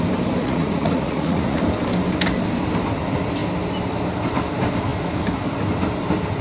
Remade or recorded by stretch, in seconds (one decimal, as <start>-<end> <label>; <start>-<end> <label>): 0.0-0.4 recorded; 0.4-1.6 remade; 1.6-6.4 recorded